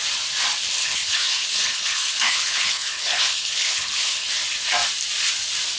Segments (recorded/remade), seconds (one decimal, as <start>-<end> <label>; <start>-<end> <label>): 0.0-0.8 recorded; 0.8-4.3 remade; 4.3-5.8 recorded